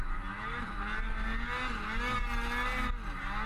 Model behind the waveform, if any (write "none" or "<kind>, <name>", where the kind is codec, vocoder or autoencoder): none